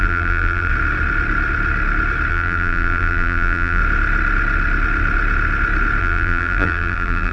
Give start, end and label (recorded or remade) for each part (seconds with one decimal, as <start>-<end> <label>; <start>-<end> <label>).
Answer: 0.0-0.7 remade; 0.7-2.3 recorded; 2.3-3.8 remade; 3.8-6.0 recorded; 6.0-7.3 remade